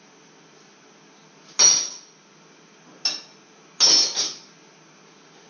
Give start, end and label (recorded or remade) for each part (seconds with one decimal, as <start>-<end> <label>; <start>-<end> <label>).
0.0-5.5 recorded